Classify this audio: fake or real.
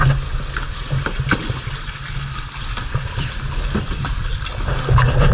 real